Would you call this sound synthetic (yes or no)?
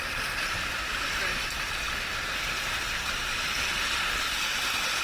no